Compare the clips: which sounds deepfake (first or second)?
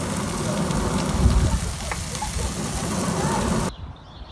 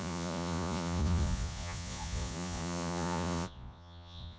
second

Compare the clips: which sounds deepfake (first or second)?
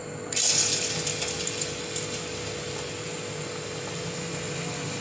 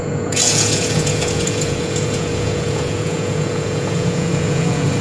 second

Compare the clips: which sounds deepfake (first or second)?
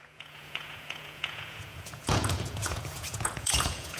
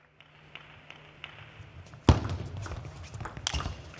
first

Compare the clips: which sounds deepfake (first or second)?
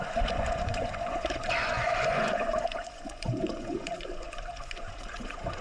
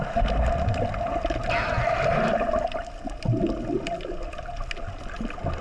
first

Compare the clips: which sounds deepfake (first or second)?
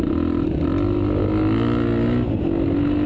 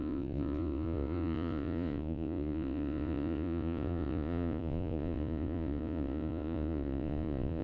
second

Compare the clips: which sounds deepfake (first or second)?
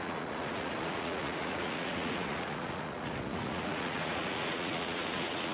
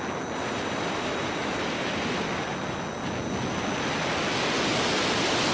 first